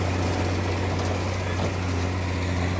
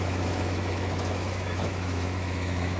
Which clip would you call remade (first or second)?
second